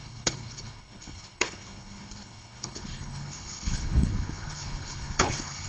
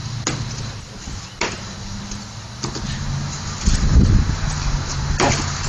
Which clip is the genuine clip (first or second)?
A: second